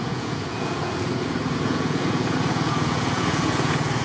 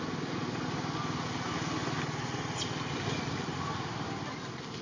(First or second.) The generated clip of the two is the first